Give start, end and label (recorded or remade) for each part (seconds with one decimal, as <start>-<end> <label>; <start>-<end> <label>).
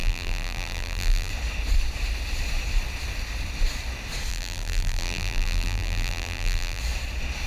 0.0-1.3 remade; 1.3-4.3 recorded; 4.3-6.8 remade; 6.8-7.5 recorded